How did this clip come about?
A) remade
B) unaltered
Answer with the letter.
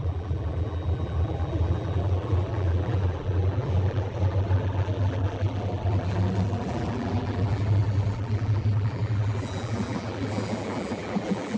A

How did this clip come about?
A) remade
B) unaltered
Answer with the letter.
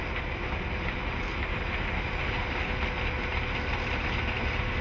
B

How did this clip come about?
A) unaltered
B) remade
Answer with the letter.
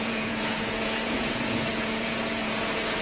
B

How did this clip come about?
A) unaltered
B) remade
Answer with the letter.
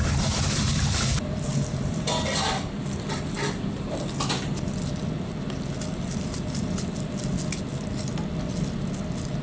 A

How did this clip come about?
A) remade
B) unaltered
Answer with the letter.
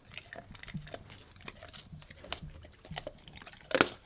B